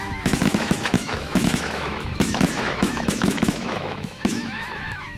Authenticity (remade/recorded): remade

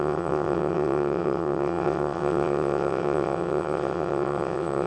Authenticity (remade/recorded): remade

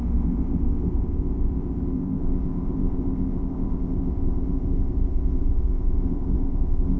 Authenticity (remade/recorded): remade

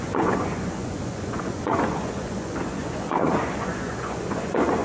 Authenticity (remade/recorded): remade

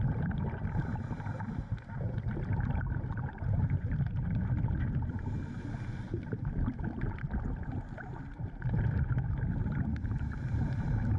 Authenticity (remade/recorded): remade